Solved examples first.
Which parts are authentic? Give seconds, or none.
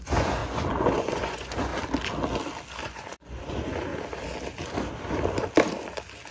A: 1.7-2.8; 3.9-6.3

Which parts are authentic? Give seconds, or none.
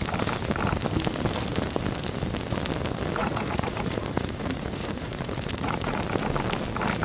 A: 0.0-3.2; 6.0-7.0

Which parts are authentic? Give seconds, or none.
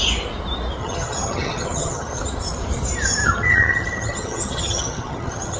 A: 0.0-0.8; 2.2-3.2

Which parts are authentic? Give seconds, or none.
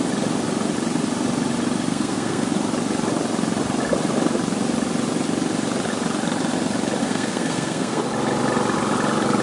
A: 0.0-1.9; 2.5-7.0; 8.0-9.4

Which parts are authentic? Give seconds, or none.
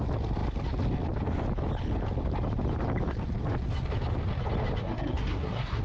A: 0.0-4.8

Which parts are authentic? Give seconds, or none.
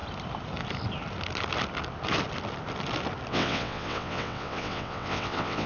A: 0.0-3.3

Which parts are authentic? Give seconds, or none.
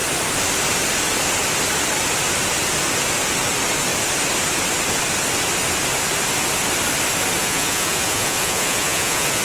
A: 0.0-7.4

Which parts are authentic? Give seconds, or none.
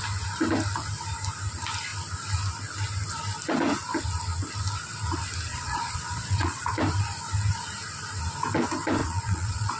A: 0.0-5.5; 6.6-9.0